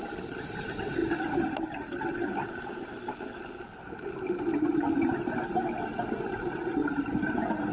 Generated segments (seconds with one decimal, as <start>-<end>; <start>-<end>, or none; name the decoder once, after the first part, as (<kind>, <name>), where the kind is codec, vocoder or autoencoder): none